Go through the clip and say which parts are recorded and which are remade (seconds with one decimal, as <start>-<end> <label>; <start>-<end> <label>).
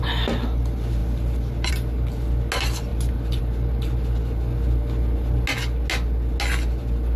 0.0-1.0 recorded; 1.0-1.7 remade; 1.7-2.9 recorded; 2.9-3.4 remade; 3.4-7.2 recorded